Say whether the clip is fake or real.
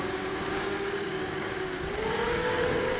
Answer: fake